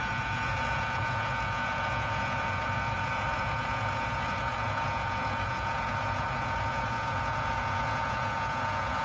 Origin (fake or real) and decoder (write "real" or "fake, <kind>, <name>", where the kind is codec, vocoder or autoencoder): fake, vocoder, Vocos